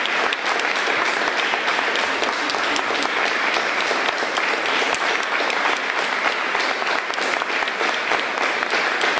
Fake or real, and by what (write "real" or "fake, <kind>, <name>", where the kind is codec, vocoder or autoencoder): fake, vocoder, BigVGAN v2